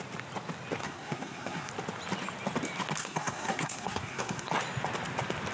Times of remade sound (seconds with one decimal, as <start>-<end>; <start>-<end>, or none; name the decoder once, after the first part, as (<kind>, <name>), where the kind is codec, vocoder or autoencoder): 0.8-1.7 (codec, SNAC); 3.0-4.5